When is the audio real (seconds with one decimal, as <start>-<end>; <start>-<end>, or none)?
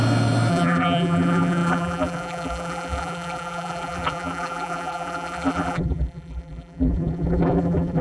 0.0-0.5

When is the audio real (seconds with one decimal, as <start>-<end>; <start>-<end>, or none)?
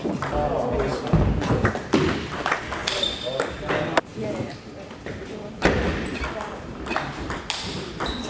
0.0-0.9; 2.4-4.1; 7.4-8.3